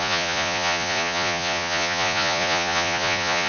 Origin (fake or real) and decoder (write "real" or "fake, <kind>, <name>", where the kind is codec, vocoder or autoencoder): fake, vocoder, Vocos